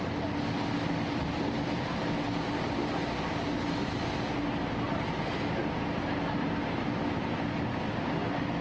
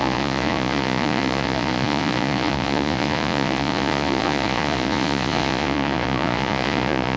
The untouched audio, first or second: first